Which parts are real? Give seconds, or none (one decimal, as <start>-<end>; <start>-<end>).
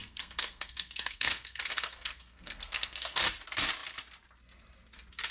3.2-5.3